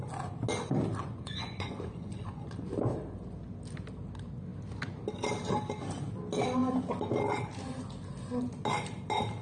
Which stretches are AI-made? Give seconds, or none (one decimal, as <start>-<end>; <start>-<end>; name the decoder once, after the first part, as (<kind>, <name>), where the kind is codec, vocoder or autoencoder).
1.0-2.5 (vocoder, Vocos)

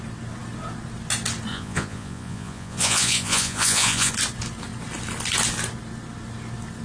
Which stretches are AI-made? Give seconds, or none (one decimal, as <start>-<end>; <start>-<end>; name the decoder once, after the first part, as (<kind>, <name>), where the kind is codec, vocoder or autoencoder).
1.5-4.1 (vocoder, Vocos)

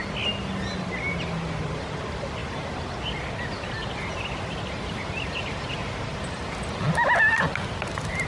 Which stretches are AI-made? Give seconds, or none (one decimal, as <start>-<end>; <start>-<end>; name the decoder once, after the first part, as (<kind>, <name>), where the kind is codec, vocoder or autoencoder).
none

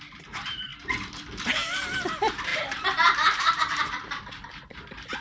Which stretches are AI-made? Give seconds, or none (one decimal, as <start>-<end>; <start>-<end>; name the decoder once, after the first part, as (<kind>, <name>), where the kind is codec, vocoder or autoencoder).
0.0-0.7 (vocoder, BigVGAN v2); 1.4-5.2

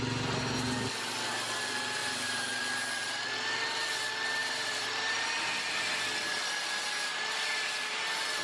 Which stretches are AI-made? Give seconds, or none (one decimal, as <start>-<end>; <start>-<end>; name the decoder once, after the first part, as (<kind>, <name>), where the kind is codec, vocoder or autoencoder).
2.0-2.6 (vocoder, BigVGAN v2); 4.4-5.3

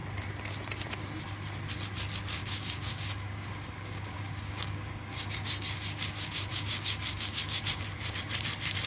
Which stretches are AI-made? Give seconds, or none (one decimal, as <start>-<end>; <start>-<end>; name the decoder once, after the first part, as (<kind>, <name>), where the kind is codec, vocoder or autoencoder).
2.4-7.6 (codec, DAC)

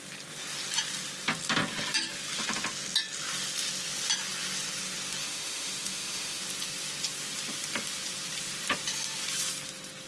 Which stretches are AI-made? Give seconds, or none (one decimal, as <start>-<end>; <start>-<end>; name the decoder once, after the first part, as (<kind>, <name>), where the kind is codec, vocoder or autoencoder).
5.2-6.4 (autoencoder, DAC-VAE)